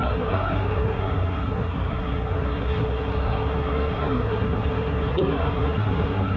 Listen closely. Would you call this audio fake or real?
fake